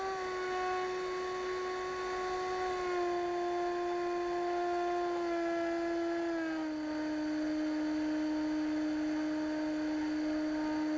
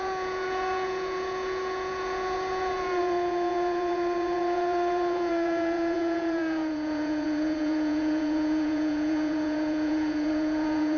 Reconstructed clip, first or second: second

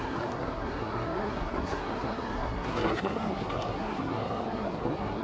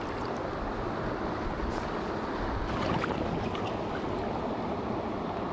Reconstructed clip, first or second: first